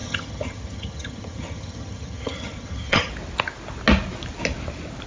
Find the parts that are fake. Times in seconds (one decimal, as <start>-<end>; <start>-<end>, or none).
0.0-3.1